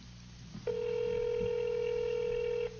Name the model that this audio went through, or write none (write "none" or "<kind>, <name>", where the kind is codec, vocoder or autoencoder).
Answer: none